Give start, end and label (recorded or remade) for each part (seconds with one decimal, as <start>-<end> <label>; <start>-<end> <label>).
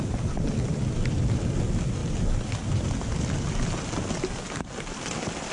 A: 0.0-5.5 recorded